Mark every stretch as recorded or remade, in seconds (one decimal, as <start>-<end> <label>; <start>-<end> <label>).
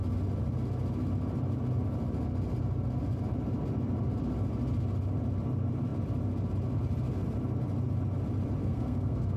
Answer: 0.0-8.6 recorded; 8.6-9.4 remade